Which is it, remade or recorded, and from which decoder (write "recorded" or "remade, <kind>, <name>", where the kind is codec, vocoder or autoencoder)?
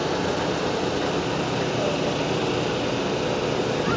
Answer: recorded